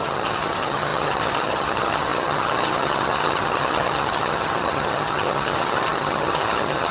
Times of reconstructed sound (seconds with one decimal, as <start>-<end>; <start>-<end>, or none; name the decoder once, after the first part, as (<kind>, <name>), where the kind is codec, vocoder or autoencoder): 0.0-6.9 (vocoder, HiFi-GAN)

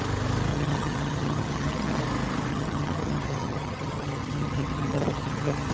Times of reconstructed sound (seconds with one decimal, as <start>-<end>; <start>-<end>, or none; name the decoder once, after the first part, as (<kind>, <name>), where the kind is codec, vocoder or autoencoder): 0.5-2.0 (vocoder, HiFi-GAN); 2.5-5.7